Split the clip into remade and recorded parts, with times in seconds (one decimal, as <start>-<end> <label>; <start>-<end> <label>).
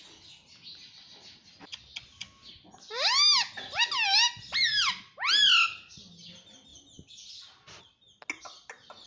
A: 0.0-9.1 recorded